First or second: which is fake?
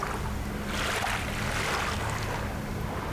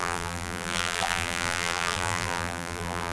second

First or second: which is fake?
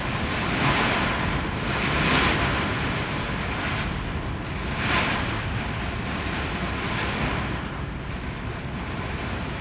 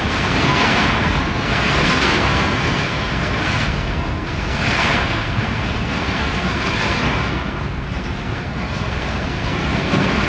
second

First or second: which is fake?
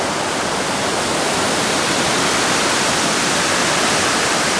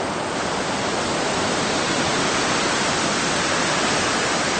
first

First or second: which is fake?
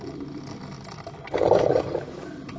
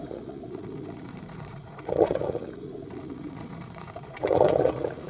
second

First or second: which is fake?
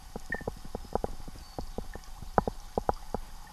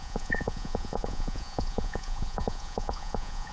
second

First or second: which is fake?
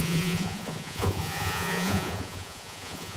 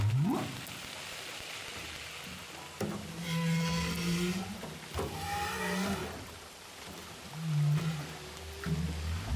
first